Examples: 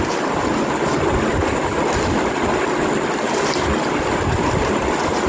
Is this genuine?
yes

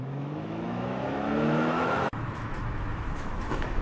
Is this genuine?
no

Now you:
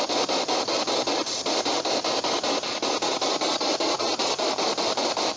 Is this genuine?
yes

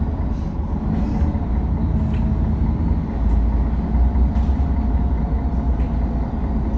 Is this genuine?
yes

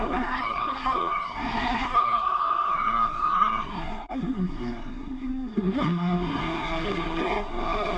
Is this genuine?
no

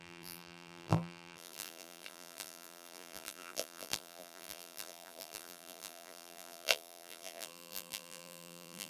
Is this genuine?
no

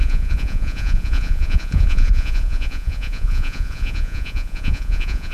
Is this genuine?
no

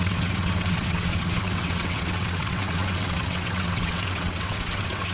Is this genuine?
no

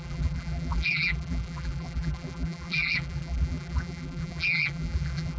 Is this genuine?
no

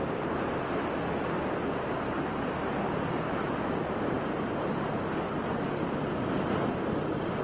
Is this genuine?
yes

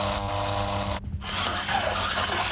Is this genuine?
yes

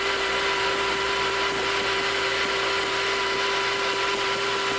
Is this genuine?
yes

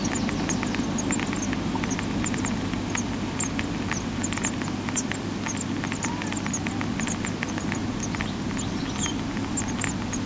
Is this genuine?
yes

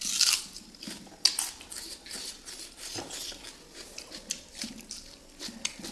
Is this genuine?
yes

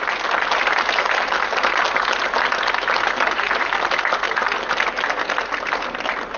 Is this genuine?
yes